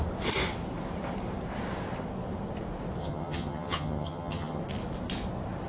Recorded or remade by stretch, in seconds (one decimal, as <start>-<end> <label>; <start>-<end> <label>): 0.0-3.0 recorded; 3.0-4.6 remade; 4.6-5.7 recorded